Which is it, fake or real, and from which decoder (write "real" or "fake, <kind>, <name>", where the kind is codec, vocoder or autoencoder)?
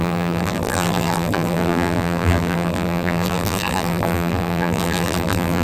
fake, vocoder, BigVGAN v2